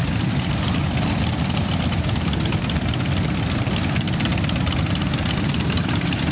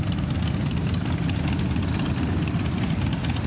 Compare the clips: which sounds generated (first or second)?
first